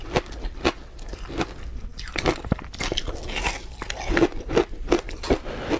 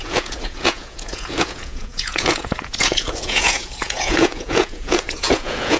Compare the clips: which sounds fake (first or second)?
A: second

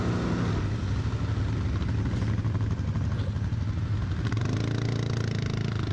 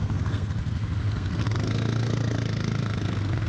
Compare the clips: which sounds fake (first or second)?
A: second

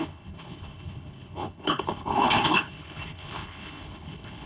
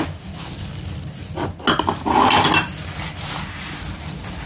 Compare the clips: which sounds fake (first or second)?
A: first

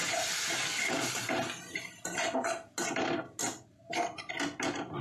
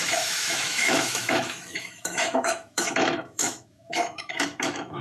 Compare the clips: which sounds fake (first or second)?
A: second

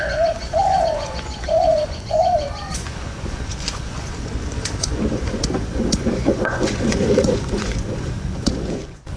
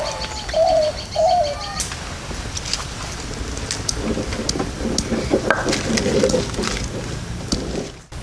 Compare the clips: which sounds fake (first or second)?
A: first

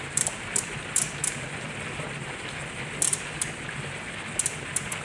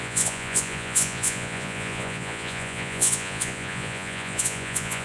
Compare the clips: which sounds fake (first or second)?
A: second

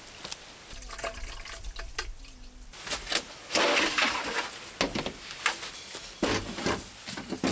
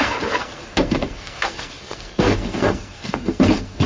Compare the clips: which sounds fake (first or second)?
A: second